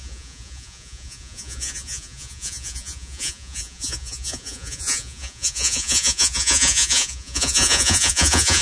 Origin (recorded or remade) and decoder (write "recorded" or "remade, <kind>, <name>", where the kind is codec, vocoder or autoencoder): remade, vocoder, Vocos